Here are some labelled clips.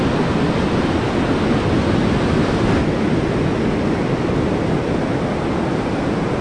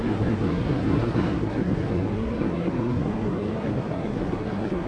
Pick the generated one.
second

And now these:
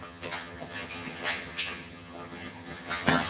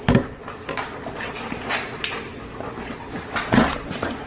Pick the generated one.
first